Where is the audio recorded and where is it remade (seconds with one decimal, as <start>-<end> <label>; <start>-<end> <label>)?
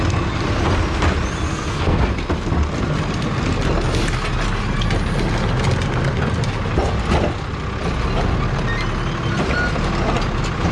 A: 0.0-1.5 recorded; 1.5-2.0 remade; 2.0-10.7 recorded